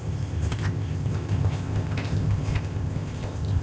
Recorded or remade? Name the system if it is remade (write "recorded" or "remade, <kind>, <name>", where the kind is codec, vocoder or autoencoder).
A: remade, codec, ZipCodec